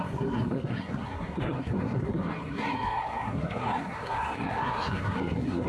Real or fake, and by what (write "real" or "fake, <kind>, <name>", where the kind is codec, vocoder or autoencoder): fake, codec, SNAC